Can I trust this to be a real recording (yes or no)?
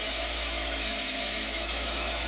no